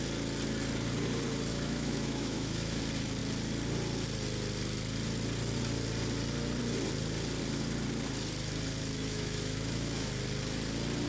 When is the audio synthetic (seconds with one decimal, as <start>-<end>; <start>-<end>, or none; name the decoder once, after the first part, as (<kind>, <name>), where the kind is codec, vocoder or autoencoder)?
1.5-2.8 (autoencoder, DAC-VAE); 8.9-10.1